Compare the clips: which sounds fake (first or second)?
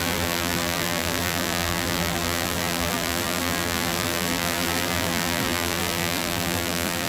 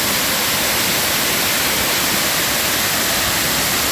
first